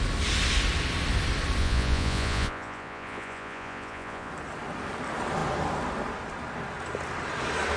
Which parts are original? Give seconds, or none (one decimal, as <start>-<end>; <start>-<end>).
0.0-1.6; 4.3-7.8